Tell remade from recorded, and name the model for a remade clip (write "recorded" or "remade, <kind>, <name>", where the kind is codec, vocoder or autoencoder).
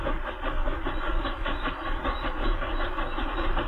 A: recorded